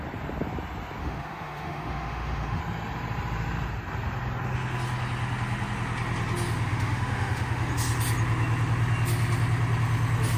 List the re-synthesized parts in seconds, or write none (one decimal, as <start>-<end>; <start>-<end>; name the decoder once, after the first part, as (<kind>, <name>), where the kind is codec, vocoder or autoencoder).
1.0-2.6 (autoencoder, DAC-VAE); 6.7-7.7